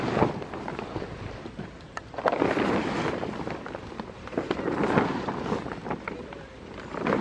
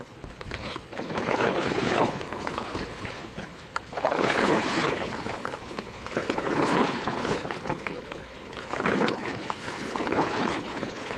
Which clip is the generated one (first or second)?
second